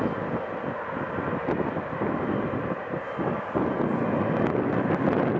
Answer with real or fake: real